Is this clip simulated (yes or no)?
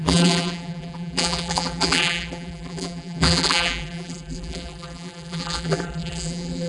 yes